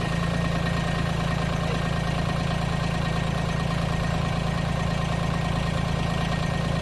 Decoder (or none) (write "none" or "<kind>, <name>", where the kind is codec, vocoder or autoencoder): vocoder, BigVGAN v2